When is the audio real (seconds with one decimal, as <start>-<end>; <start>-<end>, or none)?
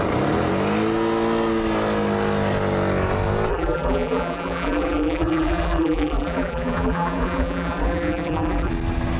0.0-3.5; 8.7-9.2